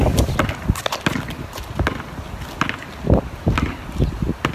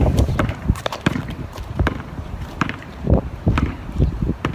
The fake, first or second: second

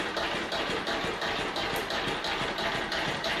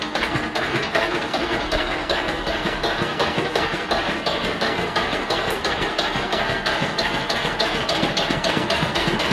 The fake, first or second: second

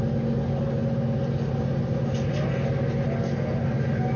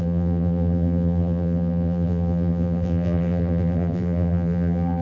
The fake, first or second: second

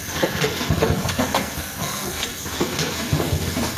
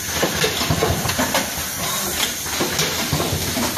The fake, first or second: first